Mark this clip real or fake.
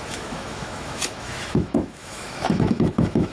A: fake